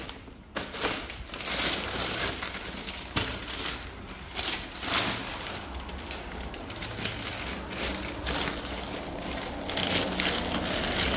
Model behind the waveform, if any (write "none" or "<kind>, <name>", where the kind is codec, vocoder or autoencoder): none